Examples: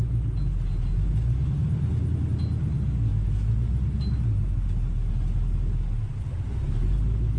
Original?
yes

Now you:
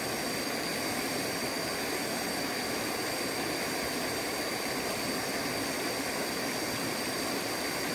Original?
yes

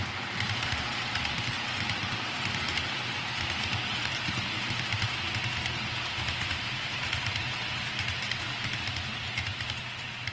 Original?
yes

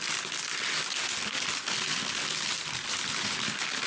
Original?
yes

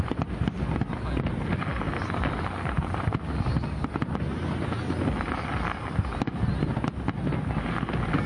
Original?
yes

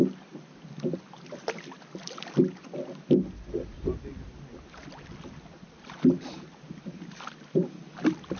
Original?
yes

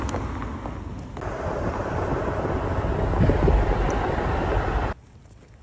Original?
yes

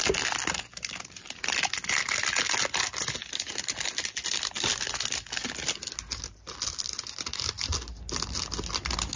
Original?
yes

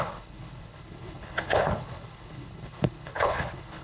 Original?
no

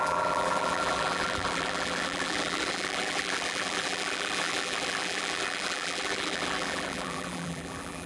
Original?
no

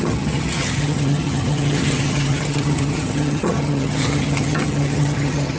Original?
no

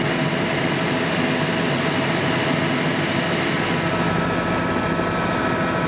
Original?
yes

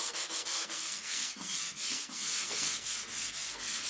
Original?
no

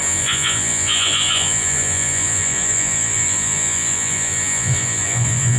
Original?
no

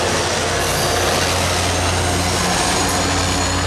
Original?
yes